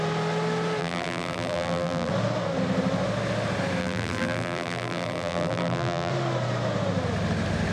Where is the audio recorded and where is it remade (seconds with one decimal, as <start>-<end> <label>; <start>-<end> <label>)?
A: 0.0-0.8 recorded; 0.8-2.1 remade; 2.1-3.8 recorded; 3.8-6.1 remade; 6.1-7.7 recorded